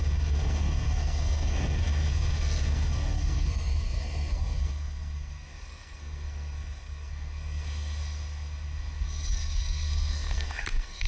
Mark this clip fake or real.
fake